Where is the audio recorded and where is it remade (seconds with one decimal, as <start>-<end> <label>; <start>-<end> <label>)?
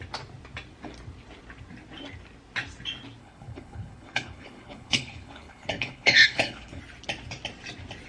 0.0-3.2 recorded; 3.2-6.8 remade; 6.8-8.1 recorded